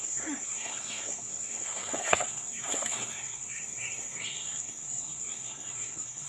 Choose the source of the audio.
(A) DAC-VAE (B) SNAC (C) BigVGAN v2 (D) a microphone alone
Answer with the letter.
B